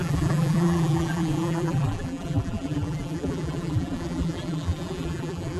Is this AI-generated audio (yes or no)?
yes